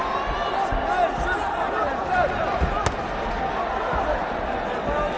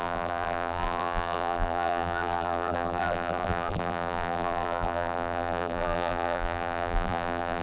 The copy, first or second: second